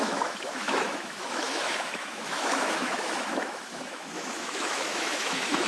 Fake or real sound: fake